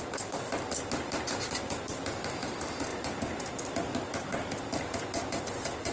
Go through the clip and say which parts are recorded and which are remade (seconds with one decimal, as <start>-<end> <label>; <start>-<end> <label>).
0.0-5.9 recorded